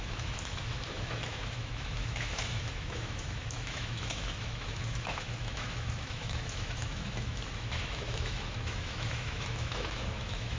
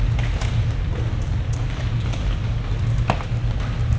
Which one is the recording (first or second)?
second